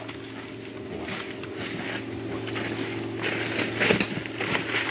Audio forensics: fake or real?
real